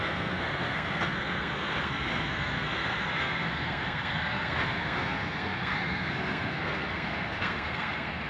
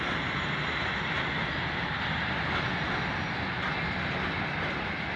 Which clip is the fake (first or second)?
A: first